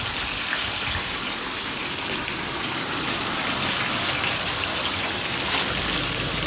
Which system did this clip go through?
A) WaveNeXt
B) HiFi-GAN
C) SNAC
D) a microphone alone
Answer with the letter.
D